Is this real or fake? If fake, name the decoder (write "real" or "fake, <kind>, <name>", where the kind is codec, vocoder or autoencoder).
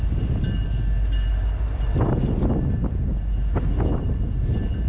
real